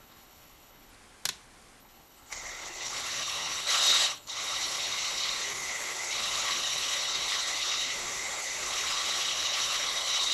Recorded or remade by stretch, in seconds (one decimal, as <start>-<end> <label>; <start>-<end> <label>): 0.0-0.9 remade; 0.9-1.8 recorded; 1.8-10.3 remade

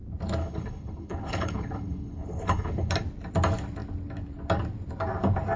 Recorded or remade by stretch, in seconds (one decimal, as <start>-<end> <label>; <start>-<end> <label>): 0.0-0.4 recorded; 0.4-2.9 remade; 2.9-5.6 recorded

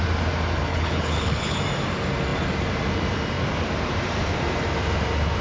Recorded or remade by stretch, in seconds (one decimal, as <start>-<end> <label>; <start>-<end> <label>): 0.0-0.7 recorded; 0.7-1.6 remade; 1.6-5.4 recorded

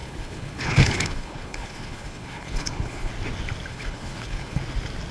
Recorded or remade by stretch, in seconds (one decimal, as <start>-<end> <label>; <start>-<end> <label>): 0.0-3.1 remade; 3.1-3.7 recorded; 3.7-4.6 remade; 4.6-5.1 recorded

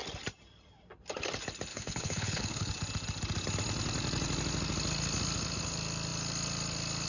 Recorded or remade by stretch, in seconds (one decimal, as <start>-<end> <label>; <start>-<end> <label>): 0.0-1.7 recorded; 1.7-2.7 remade; 2.7-7.1 recorded